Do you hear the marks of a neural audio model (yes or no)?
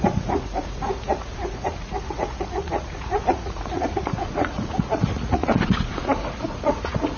yes